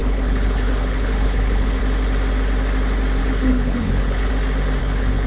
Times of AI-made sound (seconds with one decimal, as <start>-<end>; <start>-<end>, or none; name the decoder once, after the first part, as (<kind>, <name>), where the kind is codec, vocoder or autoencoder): 0.0-1.8 (codec, HILCodec); 3.2-4.3; 4.8-5.3